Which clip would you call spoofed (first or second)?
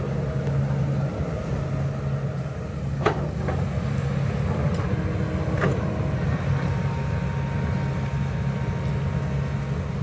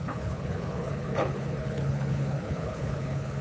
second